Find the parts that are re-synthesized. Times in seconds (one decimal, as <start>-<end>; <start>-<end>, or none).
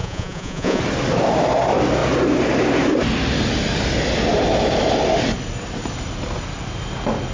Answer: 0.0-0.8